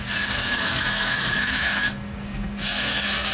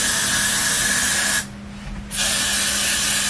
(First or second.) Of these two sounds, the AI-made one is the first